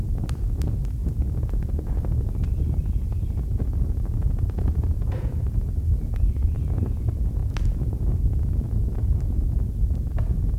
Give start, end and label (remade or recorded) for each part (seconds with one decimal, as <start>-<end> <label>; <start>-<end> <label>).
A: 0.0-1.0 recorded; 1.0-2.0 remade; 2.0-3.5 recorded; 3.5-5.4 remade; 5.4-10.6 recorded